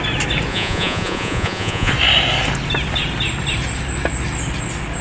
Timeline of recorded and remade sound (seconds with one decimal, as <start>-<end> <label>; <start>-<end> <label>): 0.0-0.5 recorded; 0.5-1.9 remade; 1.9-5.0 recorded

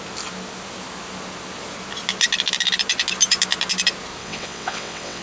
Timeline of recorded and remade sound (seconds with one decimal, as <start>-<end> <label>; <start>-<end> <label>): 0.0-4.2 recorded; 4.2-5.2 remade

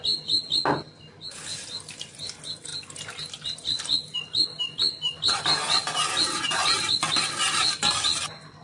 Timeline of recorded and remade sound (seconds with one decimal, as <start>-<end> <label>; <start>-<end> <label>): 0.0-8.6 recorded

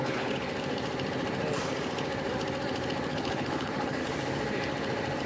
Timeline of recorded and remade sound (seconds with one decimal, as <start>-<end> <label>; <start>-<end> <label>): 0.0-0.5 remade; 0.5-3.1 recorded; 3.1-4.0 remade; 4.0-5.3 recorded